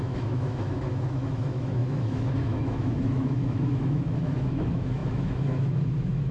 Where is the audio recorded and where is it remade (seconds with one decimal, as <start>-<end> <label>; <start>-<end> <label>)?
0.0-6.3 remade